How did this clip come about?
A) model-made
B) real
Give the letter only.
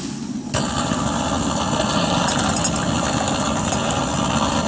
B